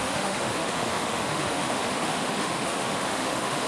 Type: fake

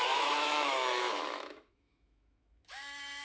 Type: fake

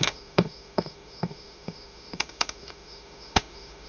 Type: fake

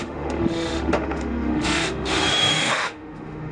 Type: fake